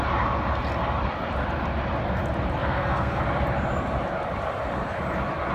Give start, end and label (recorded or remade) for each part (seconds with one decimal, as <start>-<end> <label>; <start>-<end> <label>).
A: 0.0-2.6 recorded; 2.6-3.2 remade; 3.2-5.5 recorded